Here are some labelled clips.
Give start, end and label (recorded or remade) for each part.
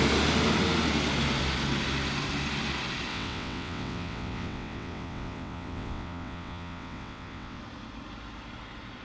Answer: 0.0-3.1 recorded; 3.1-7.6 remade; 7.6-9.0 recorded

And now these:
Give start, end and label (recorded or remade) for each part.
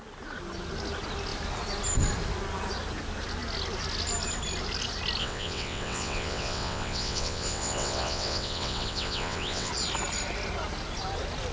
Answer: 0.0-5.2 recorded; 5.2-9.7 remade; 9.7-11.5 recorded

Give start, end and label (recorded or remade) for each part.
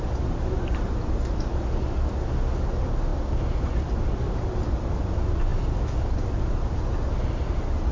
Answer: 0.0-7.9 recorded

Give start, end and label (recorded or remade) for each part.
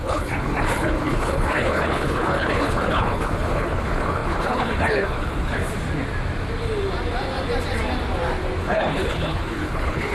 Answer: 0.0-5.6 remade; 5.6-8.6 recorded; 8.6-10.1 remade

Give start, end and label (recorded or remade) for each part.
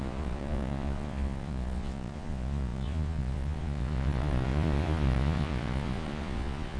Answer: 0.0-6.8 remade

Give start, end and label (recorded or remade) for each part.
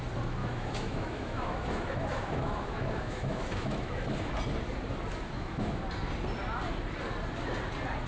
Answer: 0.0-0.4 recorded; 0.4-4.3 remade; 4.3-5.1 recorded; 5.1-5.8 remade; 5.8-8.1 recorded